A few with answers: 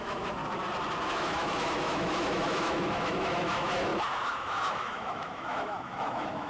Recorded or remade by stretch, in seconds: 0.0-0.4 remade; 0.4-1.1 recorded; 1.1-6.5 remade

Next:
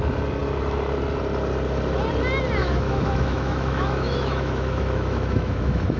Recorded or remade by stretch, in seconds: 0.0-2.6 recorded; 2.6-6.0 remade

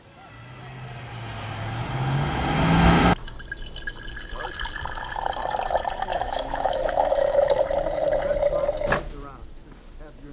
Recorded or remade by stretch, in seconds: 0.0-6.1 recorded; 6.1-7.5 remade; 7.5-10.3 recorded

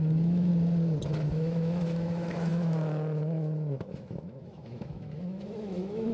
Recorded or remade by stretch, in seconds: 0.0-0.5 remade; 0.5-1.3 recorded; 1.3-6.1 remade

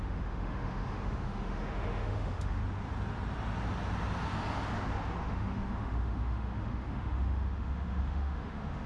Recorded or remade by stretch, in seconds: 0.0-2.6 remade; 2.6-5.2 recorded; 5.2-8.9 remade

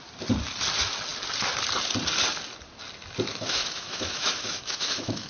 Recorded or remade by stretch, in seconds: 0.0-3.3 recorded; 3.3-5.3 remade